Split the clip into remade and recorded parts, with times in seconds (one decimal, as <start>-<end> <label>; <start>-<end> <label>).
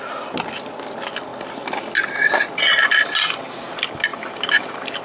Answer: 0.0-5.0 recorded